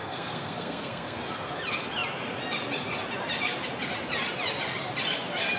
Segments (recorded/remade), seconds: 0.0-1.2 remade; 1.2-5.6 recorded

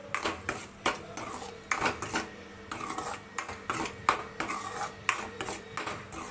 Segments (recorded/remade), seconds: 0.0-6.3 recorded

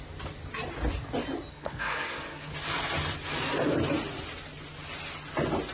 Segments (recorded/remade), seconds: 0.0-1.5 recorded; 1.5-2.5 remade; 2.5-5.7 recorded